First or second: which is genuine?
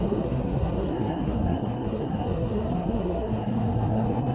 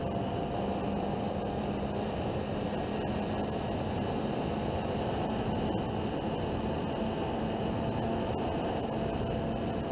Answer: second